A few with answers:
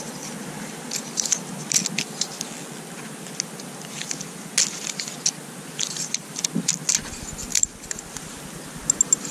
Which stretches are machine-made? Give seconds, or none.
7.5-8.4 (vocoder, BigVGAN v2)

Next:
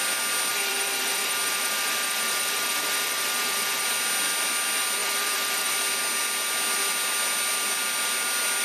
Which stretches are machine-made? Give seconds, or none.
0.5-3.8 (vocoder, BigVGAN v2); 5.0-5.7

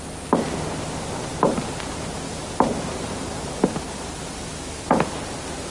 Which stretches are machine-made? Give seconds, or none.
1.3-4.7 (vocoder, BigVGAN v2)